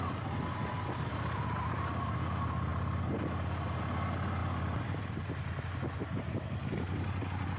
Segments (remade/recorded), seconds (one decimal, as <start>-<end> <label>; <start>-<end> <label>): 0.0-7.6 recorded